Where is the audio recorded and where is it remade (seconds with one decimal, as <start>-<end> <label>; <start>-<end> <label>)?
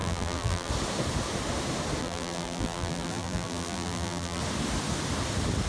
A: 0.0-0.7 remade; 0.7-2.0 recorded; 2.0-4.4 remade; 4.4-5.7 recorded